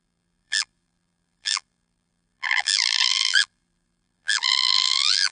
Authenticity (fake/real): fake